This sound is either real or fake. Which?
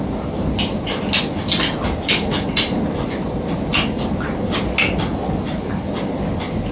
real